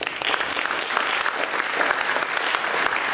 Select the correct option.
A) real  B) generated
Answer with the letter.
A